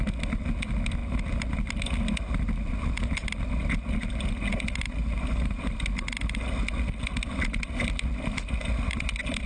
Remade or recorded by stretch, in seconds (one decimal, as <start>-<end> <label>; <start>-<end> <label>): 0.0-9.5 recorded